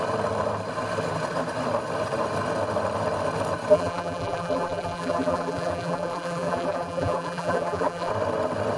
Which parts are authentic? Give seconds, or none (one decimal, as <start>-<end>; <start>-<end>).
0.0-3.7; 8.1-8.8